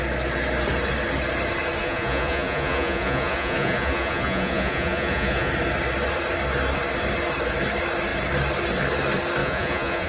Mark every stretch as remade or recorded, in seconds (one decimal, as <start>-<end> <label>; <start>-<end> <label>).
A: 0.0-1.8 recorded; 1.8-5.5 remade; 5.5-9.4 recorded; 9.4-10.1 remade